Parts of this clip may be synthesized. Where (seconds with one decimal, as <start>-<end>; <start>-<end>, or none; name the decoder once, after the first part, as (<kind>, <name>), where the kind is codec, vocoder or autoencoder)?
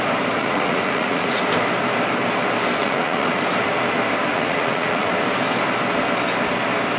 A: 0.4-1.4 (vocoder, Vocos); 2.8-3.4; 4.3-5.1